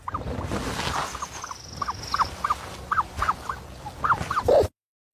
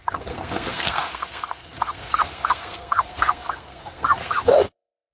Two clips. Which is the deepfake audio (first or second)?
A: second